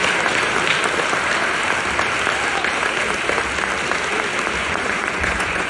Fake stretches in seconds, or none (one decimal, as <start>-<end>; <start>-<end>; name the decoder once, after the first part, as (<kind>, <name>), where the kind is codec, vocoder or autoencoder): 4.6-5.7 (vocoder, Vocos)